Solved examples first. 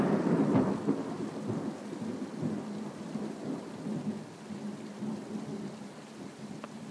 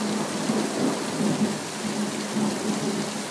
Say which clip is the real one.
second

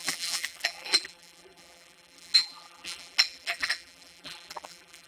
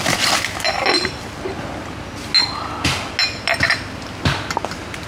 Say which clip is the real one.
second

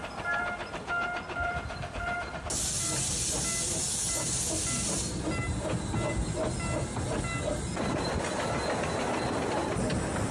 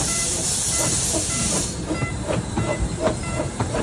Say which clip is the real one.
first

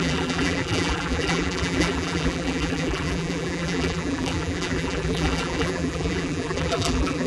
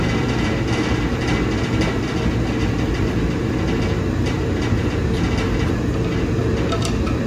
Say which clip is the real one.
second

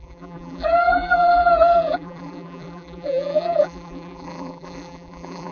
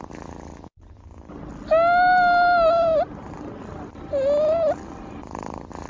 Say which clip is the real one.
second